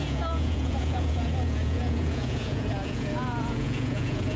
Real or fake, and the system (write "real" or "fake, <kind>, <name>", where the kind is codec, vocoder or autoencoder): fake, vocoder, Vocos